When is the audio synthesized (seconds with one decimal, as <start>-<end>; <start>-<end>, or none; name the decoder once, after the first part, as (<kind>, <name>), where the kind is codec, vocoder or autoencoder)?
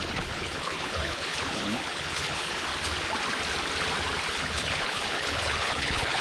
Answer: 0.0-2.7 (codec, HILCodec); 4.3-6.2